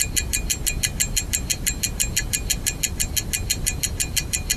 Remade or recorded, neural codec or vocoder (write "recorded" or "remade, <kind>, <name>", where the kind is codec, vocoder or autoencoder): recorded